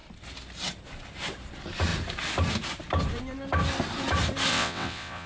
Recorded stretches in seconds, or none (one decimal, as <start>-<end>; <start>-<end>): 0.0-4.5